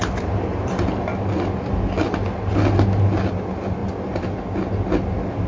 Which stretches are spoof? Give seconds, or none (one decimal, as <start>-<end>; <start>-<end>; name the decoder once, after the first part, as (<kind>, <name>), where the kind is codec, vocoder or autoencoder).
none